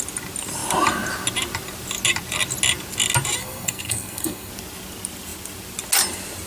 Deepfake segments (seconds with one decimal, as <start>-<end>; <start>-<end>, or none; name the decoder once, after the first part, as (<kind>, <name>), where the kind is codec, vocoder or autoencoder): 3.4-4.5 (codec, SNAC)